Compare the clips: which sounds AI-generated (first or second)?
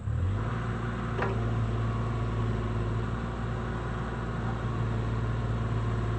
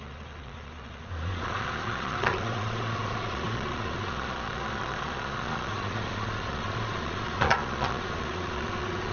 second